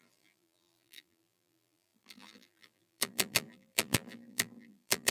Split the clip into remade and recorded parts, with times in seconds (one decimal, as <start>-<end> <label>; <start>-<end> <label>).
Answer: 0.0-5.1 remade